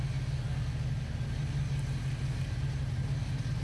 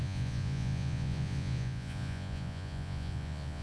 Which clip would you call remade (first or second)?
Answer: second